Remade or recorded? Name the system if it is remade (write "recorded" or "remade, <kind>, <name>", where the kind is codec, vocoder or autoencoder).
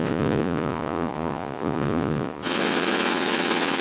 remade, vocoder, Vocos